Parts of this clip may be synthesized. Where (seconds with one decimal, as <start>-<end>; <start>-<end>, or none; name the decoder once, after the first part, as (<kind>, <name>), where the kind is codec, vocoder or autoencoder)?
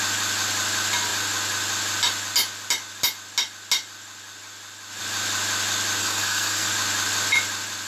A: 6.0-6.7 (codec, SNAC)